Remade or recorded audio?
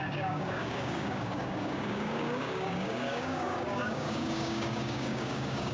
remade